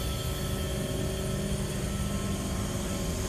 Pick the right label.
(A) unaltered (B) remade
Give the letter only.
A